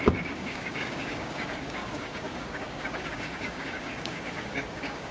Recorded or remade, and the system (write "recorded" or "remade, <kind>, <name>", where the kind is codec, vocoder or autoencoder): remade, codec, DAC